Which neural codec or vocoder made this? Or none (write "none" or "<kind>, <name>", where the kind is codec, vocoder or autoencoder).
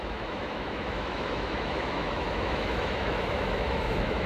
autoencoder, DAC-VAE